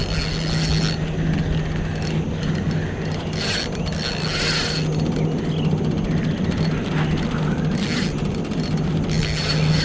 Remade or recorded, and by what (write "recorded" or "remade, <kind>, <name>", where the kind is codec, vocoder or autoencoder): recorded